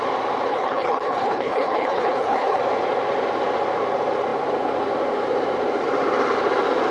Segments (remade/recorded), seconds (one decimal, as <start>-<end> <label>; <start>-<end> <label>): 0.0-0.5 recorded; 0.5-2.6 remade; 2.6-6.9 recorded